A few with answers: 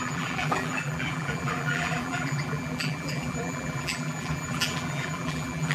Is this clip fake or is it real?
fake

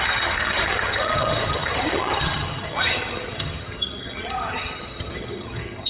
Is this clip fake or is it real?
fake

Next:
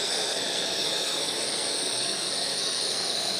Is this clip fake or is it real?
fake